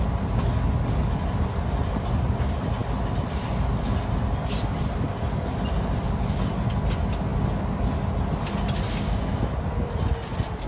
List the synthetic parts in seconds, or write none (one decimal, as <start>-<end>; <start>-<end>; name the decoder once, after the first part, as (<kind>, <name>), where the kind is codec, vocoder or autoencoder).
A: none